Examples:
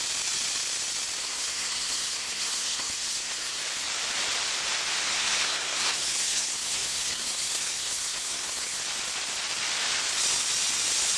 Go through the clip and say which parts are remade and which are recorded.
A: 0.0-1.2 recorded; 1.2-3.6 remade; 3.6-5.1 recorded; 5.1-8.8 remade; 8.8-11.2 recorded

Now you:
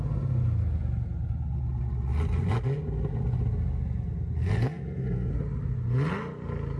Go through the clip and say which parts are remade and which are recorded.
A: 0.0-4.4 recorded; 4.4-5.3 remade; 5.3-6.8 recorded

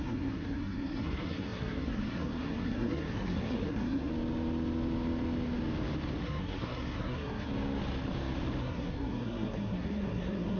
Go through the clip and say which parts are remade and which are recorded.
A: 0.0-4.1 remade; 4.1-6.2 recorded; 6.2-7.5 remade; 7.5-8.6 recorded; 8.6-10.6 remade

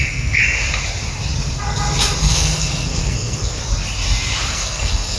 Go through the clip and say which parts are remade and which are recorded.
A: 0.0-0.4 remade; 0.4-2.2 recorded; 2.2-3.6 remade; 3.6-4.5 recorded; 4.5-5.2 remade

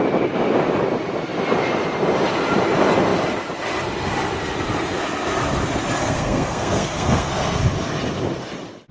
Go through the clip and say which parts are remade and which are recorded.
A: 0.0-6.0 recorded; 6.0-7.6 remade; 7.6-8.9 recorded

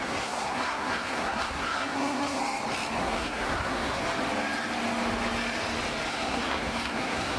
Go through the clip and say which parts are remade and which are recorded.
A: 0.0-2.4 remade; 2.4-3.0 recorded; 3.0-4.0 remade; 4.0-6.1 recorded; 6.1-7.4 remade

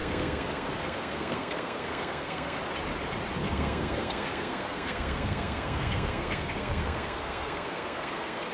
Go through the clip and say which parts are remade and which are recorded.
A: 0.0-2.6 remade; 2.6-3.4 recorded; 3.4-8.5 remade